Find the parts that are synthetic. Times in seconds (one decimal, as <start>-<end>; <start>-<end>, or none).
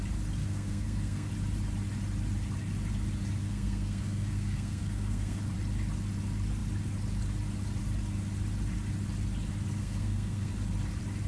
0.4-1.3; 3.4-5.4; 9.8-10.5